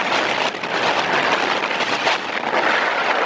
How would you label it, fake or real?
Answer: real